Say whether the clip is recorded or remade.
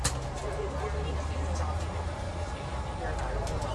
recorded